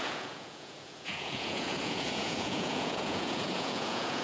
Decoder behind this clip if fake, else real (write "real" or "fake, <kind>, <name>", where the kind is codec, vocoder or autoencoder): fake, vocoder, Vocos